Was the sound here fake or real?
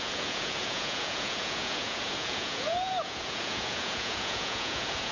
fake